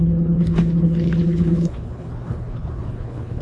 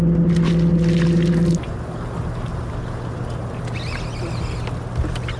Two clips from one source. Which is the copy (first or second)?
first